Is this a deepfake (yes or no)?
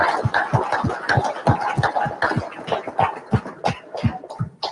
no